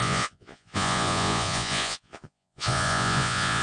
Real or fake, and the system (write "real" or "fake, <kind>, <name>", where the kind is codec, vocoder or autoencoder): fake, vocoder, Vocos